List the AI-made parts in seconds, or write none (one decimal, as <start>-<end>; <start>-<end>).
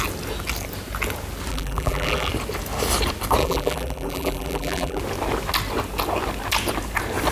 1.5-2.3; 3.4-5.0